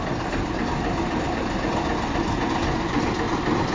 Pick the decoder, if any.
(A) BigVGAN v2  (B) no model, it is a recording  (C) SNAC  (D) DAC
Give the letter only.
B